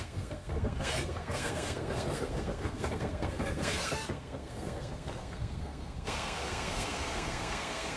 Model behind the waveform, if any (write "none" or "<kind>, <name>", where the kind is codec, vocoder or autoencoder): codec, SNAC